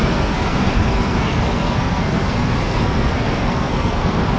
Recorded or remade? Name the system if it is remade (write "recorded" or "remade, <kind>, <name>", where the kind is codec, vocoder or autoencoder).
remade, codec, SNAC